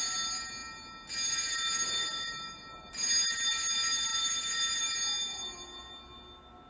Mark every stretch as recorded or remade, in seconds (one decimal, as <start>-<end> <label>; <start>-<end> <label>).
0.0-2.0 recorded; 2.0-2.9 remade; 2.9-6.7 recorded